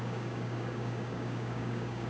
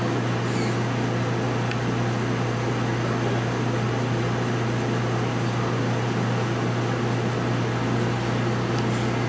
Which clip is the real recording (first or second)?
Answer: second